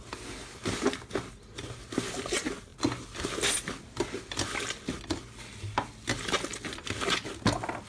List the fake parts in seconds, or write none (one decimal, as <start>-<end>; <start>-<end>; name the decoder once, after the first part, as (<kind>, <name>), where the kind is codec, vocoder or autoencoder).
none

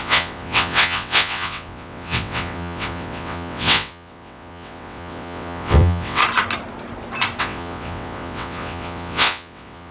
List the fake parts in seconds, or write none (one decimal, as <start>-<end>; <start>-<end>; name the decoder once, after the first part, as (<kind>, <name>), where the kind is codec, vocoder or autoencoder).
0.0-6.2 (vocoder, WaveNeXt); 7.4-9.9

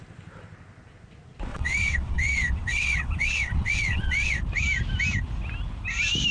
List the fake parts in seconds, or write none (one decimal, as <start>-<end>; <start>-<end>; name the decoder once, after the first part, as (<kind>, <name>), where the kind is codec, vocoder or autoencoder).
1.5-4.4 (vocoder, WaveNeXt)

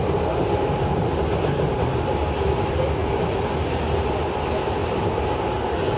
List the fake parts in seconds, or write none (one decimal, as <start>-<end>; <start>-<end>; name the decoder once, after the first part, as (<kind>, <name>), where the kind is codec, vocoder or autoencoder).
none